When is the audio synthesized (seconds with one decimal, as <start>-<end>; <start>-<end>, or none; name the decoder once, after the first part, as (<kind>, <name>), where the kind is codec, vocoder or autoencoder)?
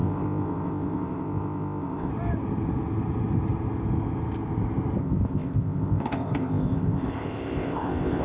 0.0-2.1 (codec, ZipCodec); 5.0-8.2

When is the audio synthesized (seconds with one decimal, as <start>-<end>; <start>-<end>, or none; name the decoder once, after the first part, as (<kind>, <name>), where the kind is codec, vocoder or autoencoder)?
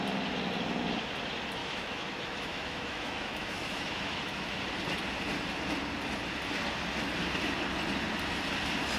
1.6-4.6 (autoencoder, DAC-VAE)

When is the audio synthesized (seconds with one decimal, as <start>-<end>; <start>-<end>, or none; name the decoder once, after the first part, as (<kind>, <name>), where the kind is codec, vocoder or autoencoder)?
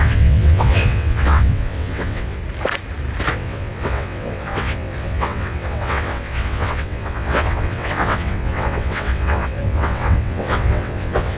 0.0-2.4 (vocoder, WaveNeXt); 3.3-11.4